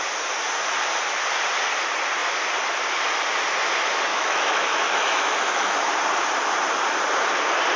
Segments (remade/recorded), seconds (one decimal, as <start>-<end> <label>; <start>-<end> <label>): 0.0-4.1 recorded; 4.1-5.7 remade; 5.7-7.8 recorded